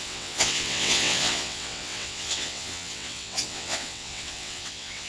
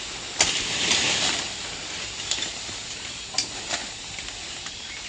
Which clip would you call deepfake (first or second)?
first